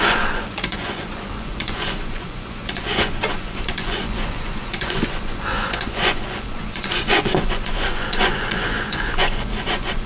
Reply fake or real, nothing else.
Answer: fake